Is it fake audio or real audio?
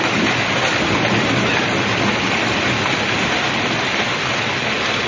real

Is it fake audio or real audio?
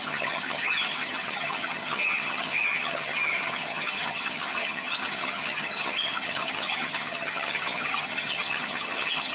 fake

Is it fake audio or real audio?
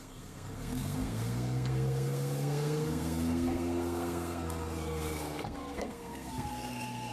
fake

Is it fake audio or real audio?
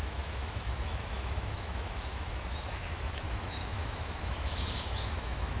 fake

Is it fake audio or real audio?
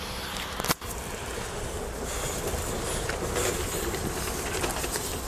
real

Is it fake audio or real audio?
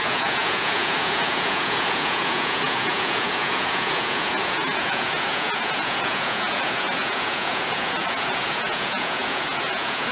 fake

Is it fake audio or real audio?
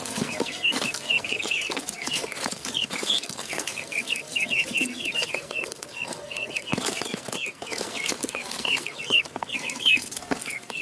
fake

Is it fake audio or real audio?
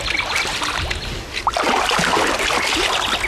real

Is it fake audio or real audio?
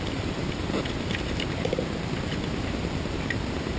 fake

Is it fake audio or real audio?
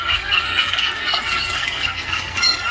fake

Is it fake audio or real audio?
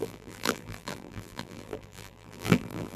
fake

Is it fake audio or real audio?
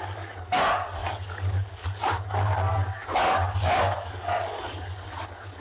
fake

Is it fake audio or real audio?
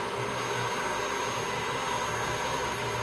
real